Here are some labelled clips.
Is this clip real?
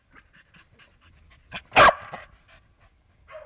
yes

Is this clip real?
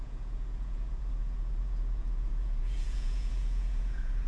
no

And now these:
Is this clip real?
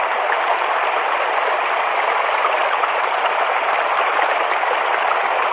yes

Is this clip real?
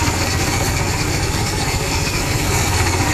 no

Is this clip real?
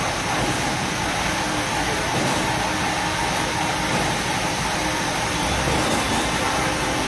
yes